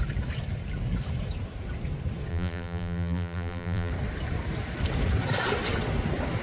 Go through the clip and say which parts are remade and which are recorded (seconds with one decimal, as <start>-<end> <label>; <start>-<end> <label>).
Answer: 0.0-2.3 recorded; 2.3-3.9 remade; 3.9-6.4 recorded